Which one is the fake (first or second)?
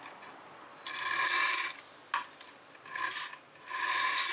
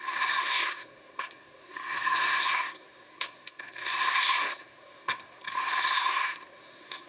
second